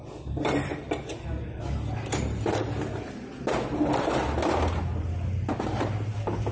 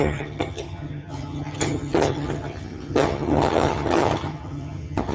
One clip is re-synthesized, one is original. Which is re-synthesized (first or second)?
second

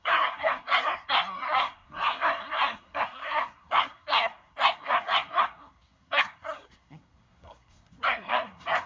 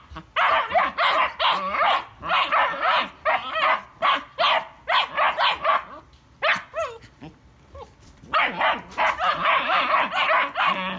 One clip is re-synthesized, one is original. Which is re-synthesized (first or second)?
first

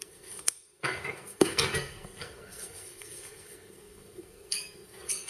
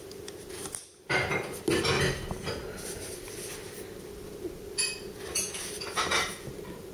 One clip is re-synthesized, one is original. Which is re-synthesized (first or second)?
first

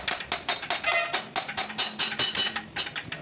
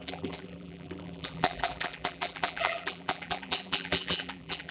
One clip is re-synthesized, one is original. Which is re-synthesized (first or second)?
second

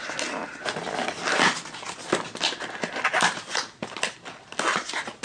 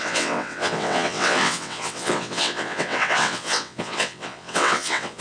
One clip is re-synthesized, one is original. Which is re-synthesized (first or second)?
second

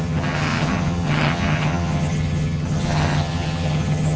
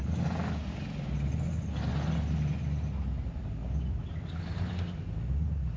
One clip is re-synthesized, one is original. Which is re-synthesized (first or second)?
first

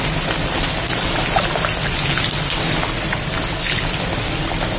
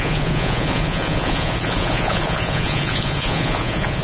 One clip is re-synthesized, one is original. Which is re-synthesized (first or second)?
second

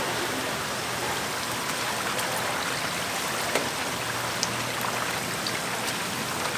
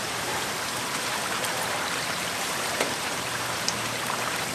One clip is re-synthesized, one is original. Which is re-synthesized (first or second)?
second